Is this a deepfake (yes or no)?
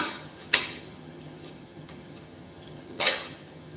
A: yes